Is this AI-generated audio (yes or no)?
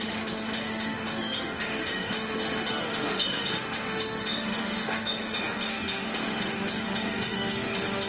yes